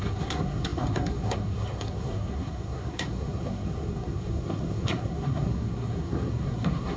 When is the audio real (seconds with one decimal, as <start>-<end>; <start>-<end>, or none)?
none